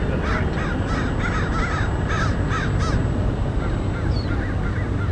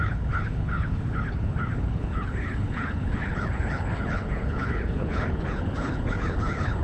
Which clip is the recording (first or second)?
first